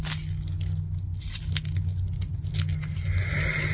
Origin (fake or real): real